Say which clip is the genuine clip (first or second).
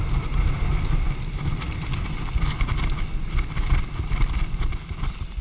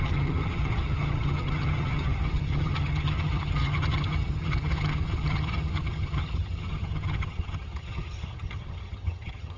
first